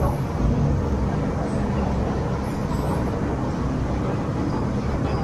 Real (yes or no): yes